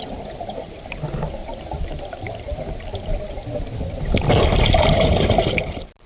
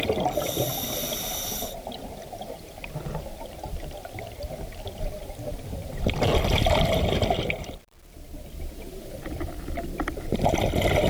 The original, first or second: first